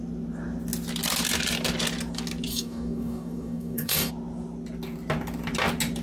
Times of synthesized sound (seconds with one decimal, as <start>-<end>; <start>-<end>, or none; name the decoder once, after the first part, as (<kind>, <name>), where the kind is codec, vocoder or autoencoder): 2.5-4.1 (codec, DAC)